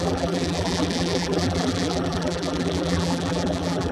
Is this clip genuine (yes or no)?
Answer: no